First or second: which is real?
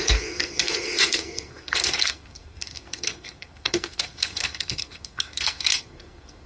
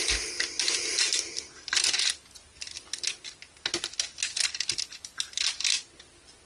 second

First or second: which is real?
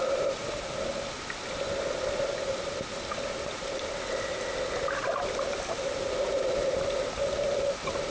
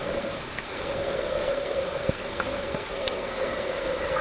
first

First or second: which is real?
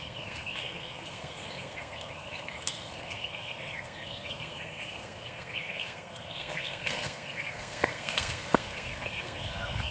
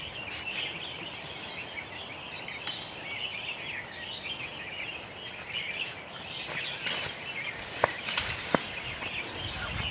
second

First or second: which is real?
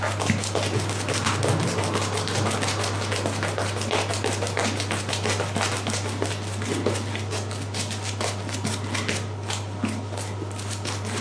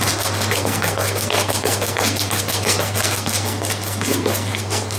first